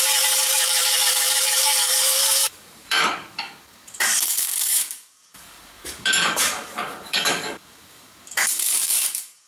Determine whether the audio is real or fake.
fake